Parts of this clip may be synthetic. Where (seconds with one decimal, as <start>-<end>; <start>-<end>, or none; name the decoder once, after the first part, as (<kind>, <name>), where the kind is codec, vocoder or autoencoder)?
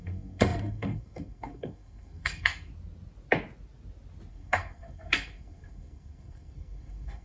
0.0-2.7 (codec, SNAC); 4.3-7.2